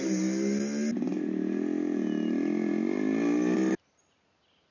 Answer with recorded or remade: recorded